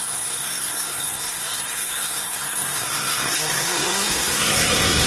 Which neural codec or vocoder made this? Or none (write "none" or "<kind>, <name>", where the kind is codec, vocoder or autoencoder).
codec, SNAC